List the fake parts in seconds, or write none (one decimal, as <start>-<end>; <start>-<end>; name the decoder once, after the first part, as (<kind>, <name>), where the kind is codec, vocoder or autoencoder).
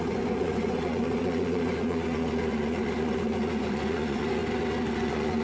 0.0-4.4 (vocoder, Vocos); 4.9-5.4